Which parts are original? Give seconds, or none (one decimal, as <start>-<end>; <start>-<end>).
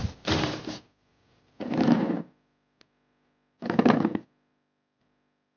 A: 0.6-5.6